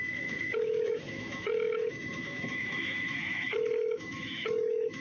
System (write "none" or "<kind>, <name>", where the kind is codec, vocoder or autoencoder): autoencoder, DAC-VAE